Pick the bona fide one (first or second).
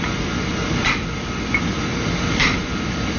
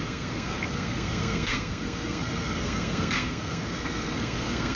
first